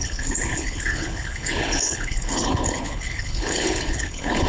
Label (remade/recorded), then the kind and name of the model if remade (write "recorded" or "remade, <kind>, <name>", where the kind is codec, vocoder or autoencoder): remade, codec, HILCodec